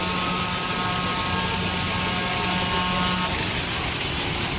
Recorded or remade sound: recorded